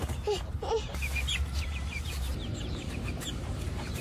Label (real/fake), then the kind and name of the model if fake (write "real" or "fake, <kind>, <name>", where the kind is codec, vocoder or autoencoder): fake, vocoder, BigVGAN v2